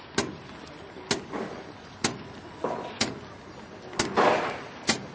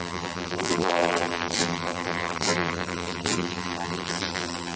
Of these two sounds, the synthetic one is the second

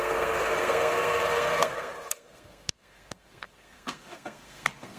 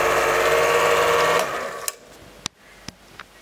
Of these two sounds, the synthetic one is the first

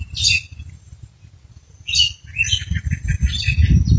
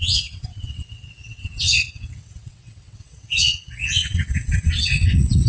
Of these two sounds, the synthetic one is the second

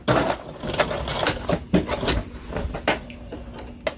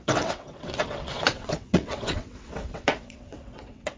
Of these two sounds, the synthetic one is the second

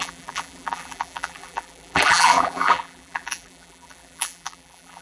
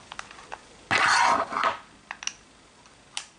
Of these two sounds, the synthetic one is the first